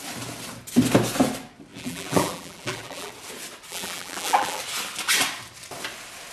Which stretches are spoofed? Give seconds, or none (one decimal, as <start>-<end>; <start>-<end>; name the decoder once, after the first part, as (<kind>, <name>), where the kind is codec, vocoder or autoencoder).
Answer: 1.7-3.1 (vocoder, BigVGAN v2); 3.7-4.6